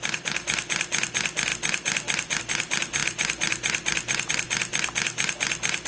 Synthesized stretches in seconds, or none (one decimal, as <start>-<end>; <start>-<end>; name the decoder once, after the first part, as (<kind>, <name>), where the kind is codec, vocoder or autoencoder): none